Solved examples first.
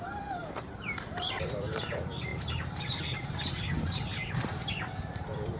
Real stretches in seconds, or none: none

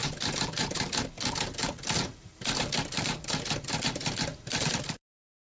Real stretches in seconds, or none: 3.4-4.3